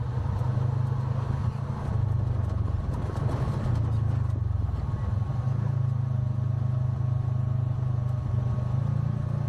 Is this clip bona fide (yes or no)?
yes